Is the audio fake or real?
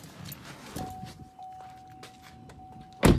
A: real